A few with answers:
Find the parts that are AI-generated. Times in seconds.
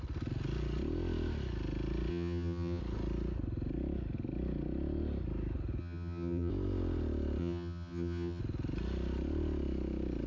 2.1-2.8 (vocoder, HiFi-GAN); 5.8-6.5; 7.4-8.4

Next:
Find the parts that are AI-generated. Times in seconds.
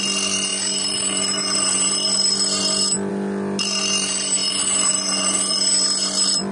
none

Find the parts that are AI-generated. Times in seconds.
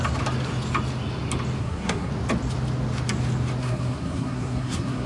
1.6-2.1 (codec, SNAC); 3.6-5.1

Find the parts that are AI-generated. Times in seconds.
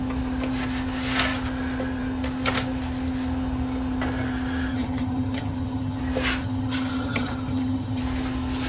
4.7-6.0 (vocoder, HiFi-GAN); 6.4-8.0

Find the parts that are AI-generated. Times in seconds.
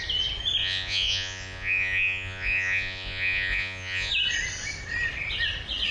0.6-4.1 (vocoder, Vocos)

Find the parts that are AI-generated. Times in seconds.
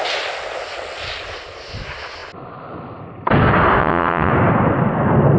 3.8-4.3 (vocoder, WaveNeXt)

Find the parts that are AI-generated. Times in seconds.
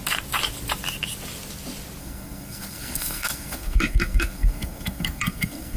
2.0-5.8 (codec, SNAC)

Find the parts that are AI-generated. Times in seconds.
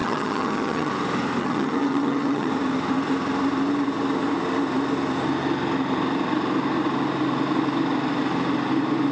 0.0-0.9 (vocoder, HiFi-GAN); 1.4-2.5